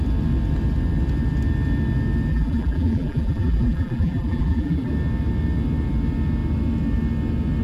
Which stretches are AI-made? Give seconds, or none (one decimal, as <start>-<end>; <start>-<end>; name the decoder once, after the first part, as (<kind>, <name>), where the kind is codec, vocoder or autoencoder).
2.3-4.9 (vocoder, BigVGAN v2)